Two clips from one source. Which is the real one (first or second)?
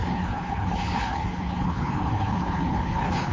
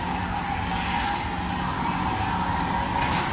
second